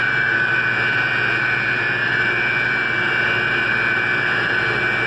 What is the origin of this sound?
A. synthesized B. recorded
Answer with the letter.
B